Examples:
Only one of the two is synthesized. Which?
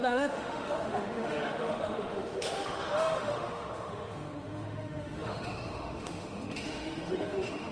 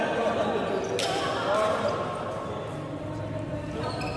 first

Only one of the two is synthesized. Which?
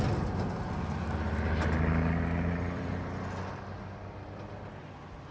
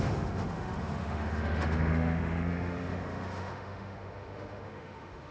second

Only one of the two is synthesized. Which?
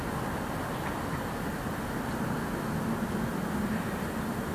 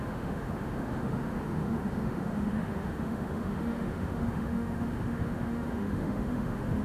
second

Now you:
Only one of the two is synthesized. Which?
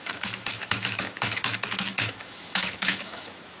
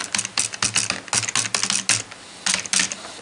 first